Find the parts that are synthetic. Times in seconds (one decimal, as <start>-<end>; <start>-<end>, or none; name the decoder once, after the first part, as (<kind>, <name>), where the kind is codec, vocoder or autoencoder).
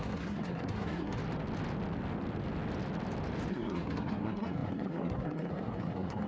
0.0-1.2 (codec, SNAC); 3.5-6.3